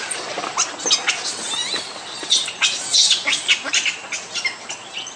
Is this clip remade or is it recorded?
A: recorded